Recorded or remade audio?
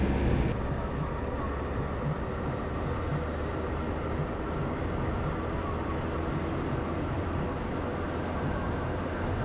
recorded